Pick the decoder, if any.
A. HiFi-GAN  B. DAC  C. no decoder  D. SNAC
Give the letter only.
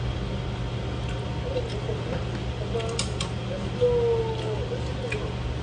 C